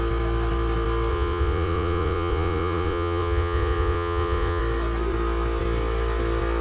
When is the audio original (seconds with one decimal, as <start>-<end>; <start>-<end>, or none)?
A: 0.0-1.1; 4.6-6.6